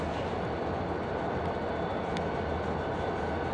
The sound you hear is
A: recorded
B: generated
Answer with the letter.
A